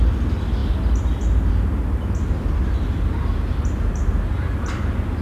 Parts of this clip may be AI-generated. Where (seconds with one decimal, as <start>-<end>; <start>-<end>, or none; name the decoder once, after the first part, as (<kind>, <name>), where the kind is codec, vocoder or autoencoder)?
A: none